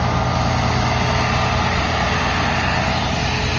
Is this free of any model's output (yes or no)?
yes